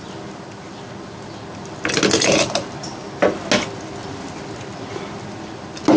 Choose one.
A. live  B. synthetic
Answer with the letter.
A